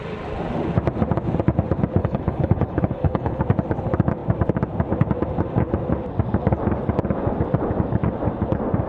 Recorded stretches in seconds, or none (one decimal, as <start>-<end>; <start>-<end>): 0.0-2.0; 3.4-8.9